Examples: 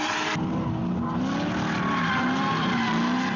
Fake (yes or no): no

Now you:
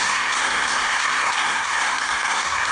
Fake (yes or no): yes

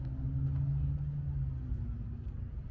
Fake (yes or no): no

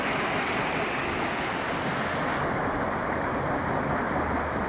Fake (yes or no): no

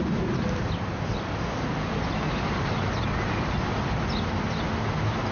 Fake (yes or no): no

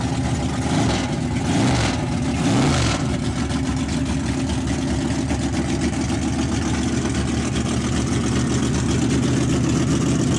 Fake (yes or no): no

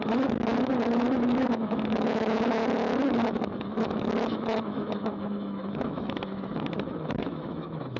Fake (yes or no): yes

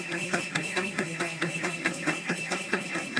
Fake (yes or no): yes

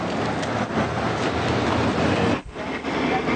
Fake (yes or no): no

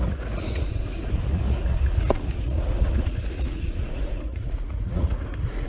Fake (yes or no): yes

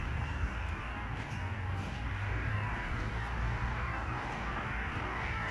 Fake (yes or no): yes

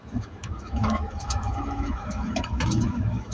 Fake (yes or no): yes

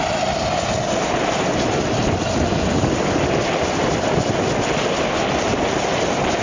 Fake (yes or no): no